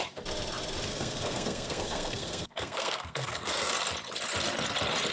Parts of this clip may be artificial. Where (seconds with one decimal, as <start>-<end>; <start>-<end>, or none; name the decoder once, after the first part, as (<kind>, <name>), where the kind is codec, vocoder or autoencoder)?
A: 0.9-3.7 (codec, SNAC)

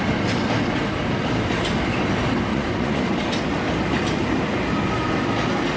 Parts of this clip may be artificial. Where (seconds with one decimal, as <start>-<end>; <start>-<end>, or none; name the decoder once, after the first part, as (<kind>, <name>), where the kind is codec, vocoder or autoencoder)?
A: 2.5-3.0 (vocoder, Vocos)

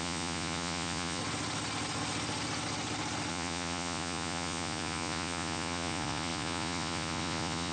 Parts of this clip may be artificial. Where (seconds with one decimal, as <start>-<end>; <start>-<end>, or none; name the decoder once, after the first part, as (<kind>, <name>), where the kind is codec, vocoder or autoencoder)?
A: 0.0-1.2 (vocoder, Vocos); 3.3-7.7

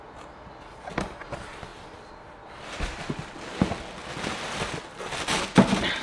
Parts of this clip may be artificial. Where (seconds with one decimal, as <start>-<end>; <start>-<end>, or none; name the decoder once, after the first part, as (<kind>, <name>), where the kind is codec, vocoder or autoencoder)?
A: none

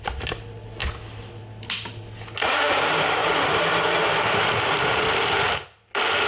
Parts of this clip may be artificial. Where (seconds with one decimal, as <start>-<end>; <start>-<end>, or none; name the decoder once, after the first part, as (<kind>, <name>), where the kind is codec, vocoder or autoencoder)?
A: none

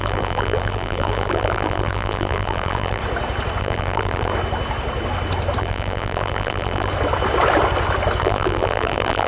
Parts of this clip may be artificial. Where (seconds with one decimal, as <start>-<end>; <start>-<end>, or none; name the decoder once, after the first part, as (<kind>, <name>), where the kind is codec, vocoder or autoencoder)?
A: 0.0-3.0 (vocoder, BigVGAN v2); 3.6-4.3; 5.6-6.9; 8.2-9.3

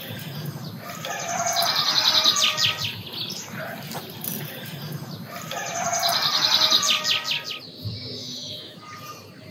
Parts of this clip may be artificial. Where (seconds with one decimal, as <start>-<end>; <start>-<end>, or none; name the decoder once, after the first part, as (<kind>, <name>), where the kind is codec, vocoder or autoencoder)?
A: 8.2-8.8 (autoencoder, DAC-VAE)